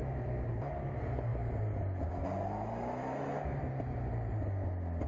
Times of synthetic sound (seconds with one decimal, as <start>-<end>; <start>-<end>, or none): none